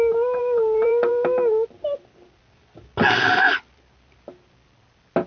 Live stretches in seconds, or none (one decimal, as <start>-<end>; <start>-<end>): 0.0-0.4; 1.1-5.3